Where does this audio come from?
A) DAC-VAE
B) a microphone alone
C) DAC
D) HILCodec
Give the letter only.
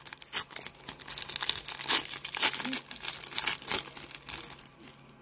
B